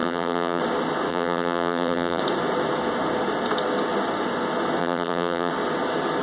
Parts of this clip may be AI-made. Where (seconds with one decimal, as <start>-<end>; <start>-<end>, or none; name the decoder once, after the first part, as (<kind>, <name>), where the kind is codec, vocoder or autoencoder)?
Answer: 0.0-0.6 (vocoder, BigVGAN v2); 1.1-2.2; 4.8-5.5